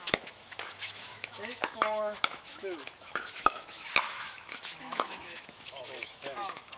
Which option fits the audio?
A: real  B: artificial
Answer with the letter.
B